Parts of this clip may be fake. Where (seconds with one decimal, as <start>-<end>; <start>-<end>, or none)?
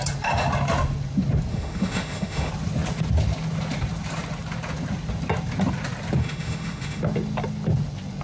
1.5-2.5; 6.2-7.0